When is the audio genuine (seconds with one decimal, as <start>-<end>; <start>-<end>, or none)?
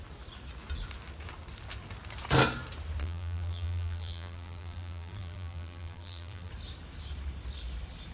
0.0-3.0; 6.5-8.1